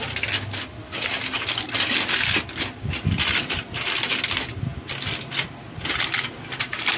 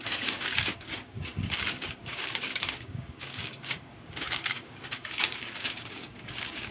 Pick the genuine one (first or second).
first